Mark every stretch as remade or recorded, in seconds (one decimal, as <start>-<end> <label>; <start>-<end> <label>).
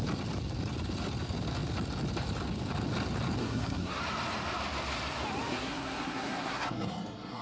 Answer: 0.0-3.4 recorded; 3.4-4.0 remade; 4.0-5.5 recorded; 5.5-7.4 remade